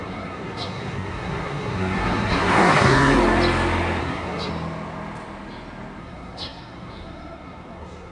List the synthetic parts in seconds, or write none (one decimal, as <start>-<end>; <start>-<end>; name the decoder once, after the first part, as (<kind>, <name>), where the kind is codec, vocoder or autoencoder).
0.0-3.2 (codec, SNAC); 4.0-4.5; 6.0-8.1